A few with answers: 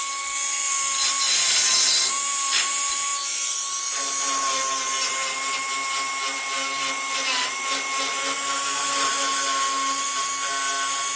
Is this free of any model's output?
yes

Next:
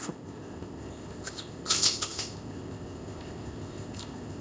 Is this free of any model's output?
no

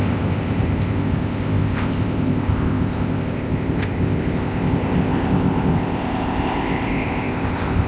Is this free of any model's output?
no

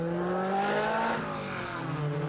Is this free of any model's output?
yes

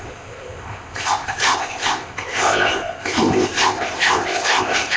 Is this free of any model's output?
no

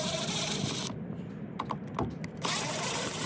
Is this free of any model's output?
yes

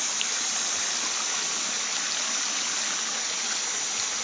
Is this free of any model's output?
yes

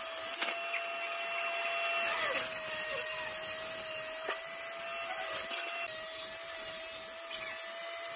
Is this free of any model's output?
yes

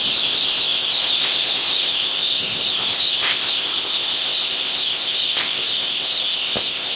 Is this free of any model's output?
no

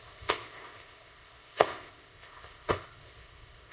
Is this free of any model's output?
no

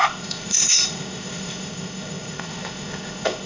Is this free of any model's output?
no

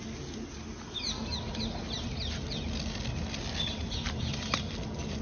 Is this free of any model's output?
yes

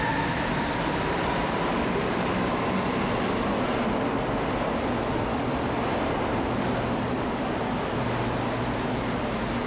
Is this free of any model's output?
yes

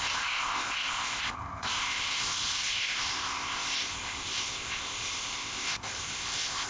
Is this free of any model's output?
no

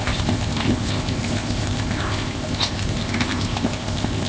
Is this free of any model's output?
no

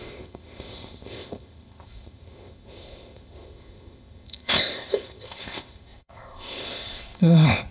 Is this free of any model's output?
no